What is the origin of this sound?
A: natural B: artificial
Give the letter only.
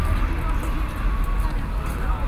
A